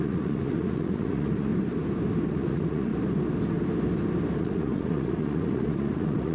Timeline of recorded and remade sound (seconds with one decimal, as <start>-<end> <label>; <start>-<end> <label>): 0.0-1.5 remade; 1.5-2.3 recorded; 2.3-2.9 remade; 2.9-4.4 recorded; 4.4-6.3 remade